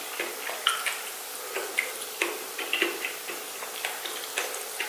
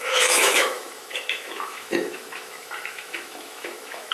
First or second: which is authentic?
first